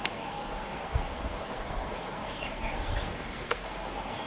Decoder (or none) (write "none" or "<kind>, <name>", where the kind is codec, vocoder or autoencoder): codec, SNAC